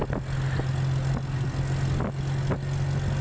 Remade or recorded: recorded